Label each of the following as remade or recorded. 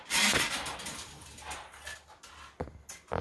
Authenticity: recorded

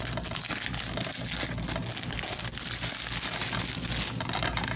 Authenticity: recorded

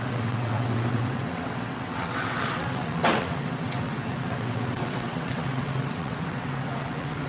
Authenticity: remade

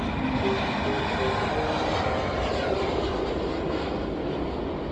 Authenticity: recorded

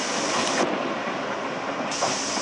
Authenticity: recorded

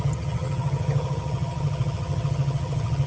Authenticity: remade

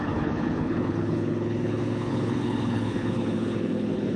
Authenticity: remade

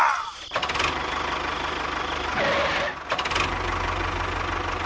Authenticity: recorded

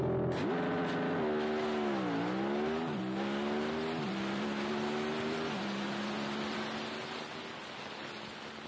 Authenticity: recorded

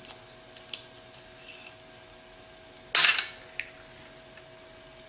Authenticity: recorded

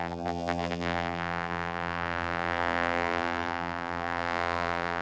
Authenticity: remade